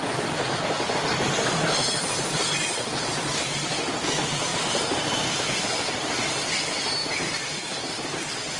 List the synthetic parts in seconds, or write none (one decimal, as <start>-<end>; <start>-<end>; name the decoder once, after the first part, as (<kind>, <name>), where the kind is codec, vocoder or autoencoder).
4.5-5.2 (vocoder, BigVGAN v2); 7.0-7.8